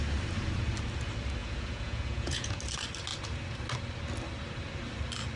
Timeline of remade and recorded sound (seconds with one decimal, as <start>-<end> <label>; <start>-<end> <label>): 0.0-1.4 recorded; 1.4-2.6 remade; 2.6-5.4 recorded

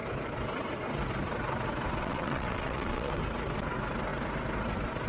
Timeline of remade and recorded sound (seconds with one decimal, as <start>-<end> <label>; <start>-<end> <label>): 0.0-2.0 recorded; 2.0-3.2 remade; 3.2-5.1 recorded

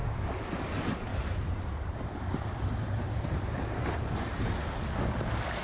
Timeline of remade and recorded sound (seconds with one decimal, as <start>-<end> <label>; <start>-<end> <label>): 0.0-1.1 recorded; 1.1-4.5 remade; 4.5-5.6 recorded

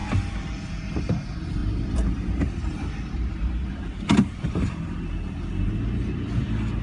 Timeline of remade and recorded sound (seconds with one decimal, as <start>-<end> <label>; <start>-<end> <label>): 0.0-1.6 recorded; 1.6-5.0 remade; 5.0-6.8 recorded

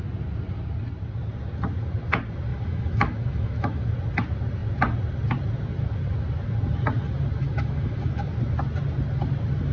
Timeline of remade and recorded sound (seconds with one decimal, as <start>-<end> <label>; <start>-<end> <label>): 0.0-2.5 recorded; 2.5-3.9 remade; 3.9-7.4 recorded; 7.4-8.3 remade; 8.3-9.7 recorded

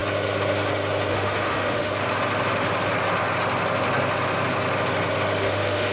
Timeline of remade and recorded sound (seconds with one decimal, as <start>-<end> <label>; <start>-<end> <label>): 0.0-1.1 recorded; 1.1-1.9 remade; 1.9-5.4 recorded; 5.4-5.9 remade